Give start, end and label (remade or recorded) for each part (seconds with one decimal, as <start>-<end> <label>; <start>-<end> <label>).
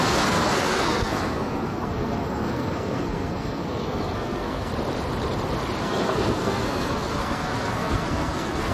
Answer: 0.0-4.7 remade; 4.7-5.8 recorded; 5.8-8.7 remade